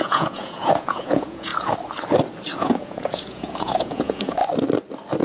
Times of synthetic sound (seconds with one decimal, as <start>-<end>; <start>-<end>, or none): 0.0-1.5; 2.6-4.4